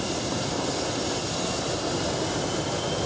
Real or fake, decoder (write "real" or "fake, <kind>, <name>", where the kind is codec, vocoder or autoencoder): real